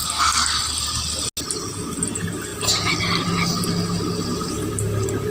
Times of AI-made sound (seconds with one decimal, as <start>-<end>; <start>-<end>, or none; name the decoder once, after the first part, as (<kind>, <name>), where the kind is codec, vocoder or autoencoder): none